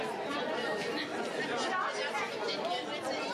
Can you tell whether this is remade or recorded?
recorded